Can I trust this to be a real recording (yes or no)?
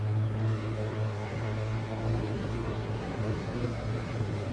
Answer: no